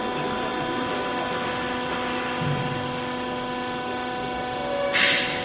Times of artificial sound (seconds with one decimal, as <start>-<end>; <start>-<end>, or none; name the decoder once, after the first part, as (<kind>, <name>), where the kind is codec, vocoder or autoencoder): none